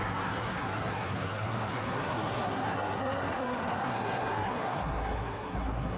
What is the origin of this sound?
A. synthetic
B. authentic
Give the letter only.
A